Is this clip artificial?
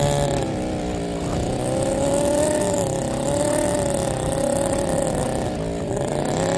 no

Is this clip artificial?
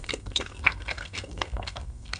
yes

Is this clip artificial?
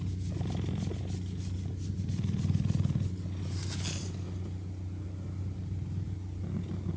no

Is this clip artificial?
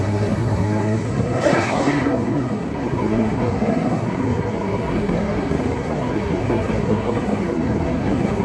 yes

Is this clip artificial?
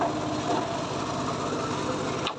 no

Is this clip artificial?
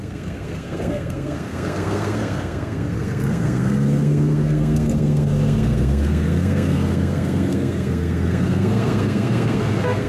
yes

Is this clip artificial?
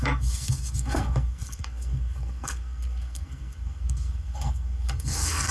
yes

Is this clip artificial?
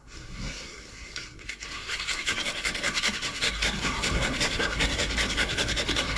yes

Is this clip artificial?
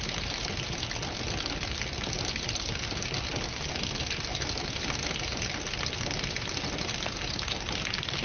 no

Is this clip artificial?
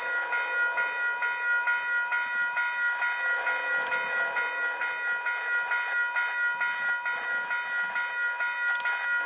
no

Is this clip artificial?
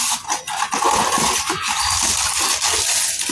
no